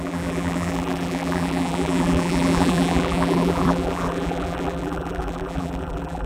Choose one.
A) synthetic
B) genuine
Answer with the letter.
A